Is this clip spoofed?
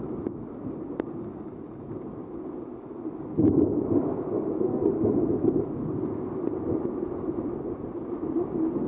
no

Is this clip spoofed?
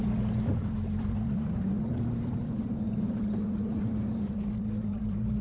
yes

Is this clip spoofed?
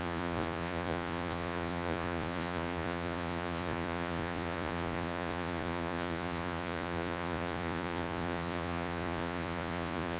yes